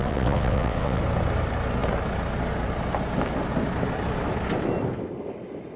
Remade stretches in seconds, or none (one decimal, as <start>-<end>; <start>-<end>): 0.0-1.0